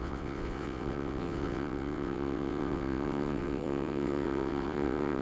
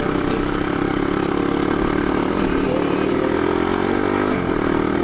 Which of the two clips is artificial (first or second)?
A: first